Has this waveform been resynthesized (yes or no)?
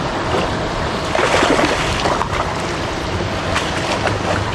yes